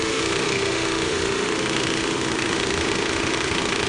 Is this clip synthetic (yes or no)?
yes